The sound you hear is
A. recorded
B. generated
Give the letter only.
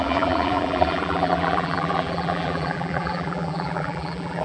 B